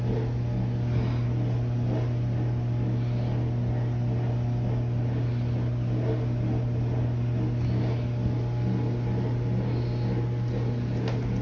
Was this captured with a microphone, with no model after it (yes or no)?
yes